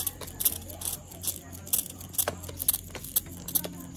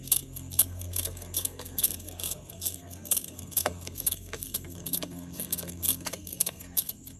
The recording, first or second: first